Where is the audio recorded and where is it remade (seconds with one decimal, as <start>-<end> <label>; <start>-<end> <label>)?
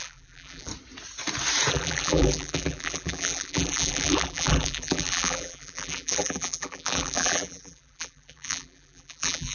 0.0-0.7 remade; 0.7-1.7 recorded; 1.7-9.5 remade